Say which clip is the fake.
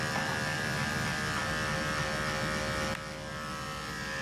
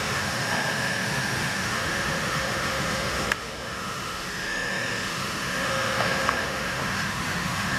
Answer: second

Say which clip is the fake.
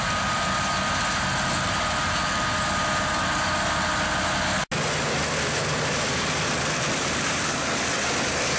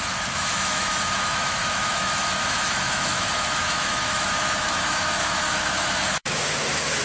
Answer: second